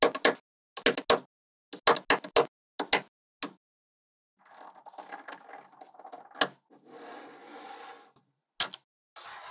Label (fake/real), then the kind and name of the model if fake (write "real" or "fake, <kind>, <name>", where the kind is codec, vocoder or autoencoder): real